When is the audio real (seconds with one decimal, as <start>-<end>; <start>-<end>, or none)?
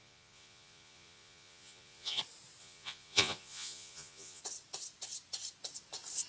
2.2-2.6; 4.4-6.3